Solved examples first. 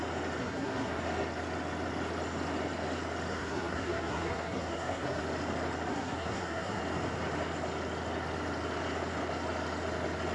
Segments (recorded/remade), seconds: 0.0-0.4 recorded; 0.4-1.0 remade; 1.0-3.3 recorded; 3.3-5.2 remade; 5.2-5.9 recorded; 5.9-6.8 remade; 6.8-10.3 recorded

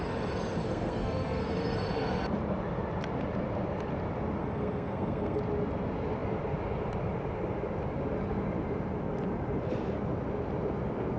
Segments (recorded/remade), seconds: 0.0-0.6 recorded; 0.6-1.5 remade; 1.5-4.4 recorded; 4.4-5.4 remade; 5.4-11.2 recorded

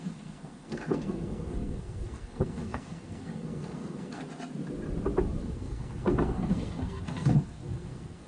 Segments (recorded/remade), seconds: 0.0-4.2 remade; 4.2-5.4 recorded; 5.4-8.3 remade

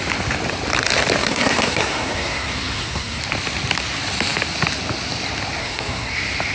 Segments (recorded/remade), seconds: 0.0-1.2 recorded; 1.2-3.2 remade; 3.2-5.6 recorded; 5.6-6.1 remade; 6.1-6.5 recorded

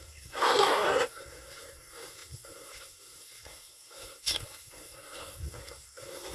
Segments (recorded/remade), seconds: 0.0-6.3 remade

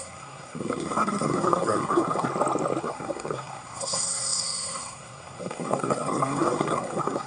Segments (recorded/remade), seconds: 0.0-2.3 remade; 2.3-2.8 recorded; 2.8-7.3 remade

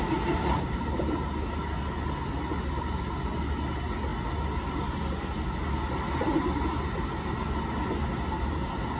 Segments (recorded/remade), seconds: 0.0-9.0 recorded

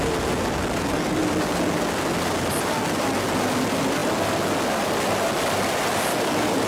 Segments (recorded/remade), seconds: 0.0-6.7 recorded